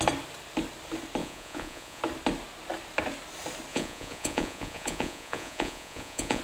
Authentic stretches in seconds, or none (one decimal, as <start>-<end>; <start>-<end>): 0.0-1.2; 2.0-3.7